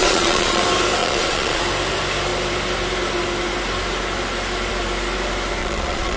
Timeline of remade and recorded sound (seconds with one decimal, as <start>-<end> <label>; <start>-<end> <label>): 0.0-0.6 remade; 0.6-1.0 recorded; 1.0-1.6 remade; 1.6-5.6 recorded; 5.6-6.2 remade

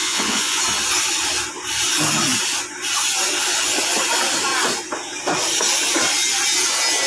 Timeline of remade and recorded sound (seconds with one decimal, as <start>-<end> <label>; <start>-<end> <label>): 0.0-0.6 remade; 0.6-7.1 recorded

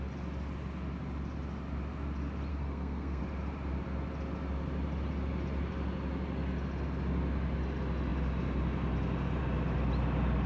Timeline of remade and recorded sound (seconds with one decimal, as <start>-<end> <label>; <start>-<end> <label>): 0.0-2.5 recorded; 2.5-3.2 remade; 3.2-10.5 recorded

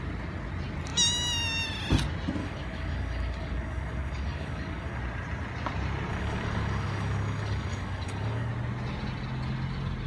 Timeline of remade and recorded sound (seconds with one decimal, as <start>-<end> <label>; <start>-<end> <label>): 0.0-2.4 recorded; 2.4-5.0 remade; 5.0-6.1 recorded; 6.1-8.5 remade; 8.5-10.1 recorded

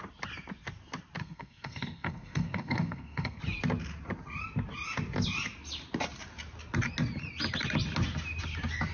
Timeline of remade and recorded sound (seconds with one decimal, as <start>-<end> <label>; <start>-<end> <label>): 0.0-1.2 recorded; 1.2-3.4 remade; 3.4-8.9 recorded